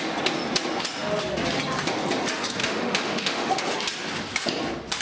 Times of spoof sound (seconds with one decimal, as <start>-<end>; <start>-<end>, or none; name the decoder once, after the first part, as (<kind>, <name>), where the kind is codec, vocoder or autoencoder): 2.6-3.6 (autoencoder, DAC-VAE)